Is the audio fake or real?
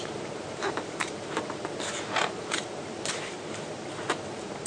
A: fake